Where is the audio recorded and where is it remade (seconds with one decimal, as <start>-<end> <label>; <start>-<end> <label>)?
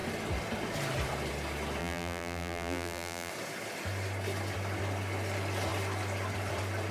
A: 0.0-1.8 recorded; 1.8-3.3 remade; 3.3-6.9 recorded